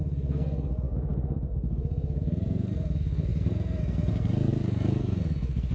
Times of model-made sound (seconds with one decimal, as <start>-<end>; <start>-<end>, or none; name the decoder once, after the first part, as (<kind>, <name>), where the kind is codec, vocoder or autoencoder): 0.0-5.7 (codec, SNAC)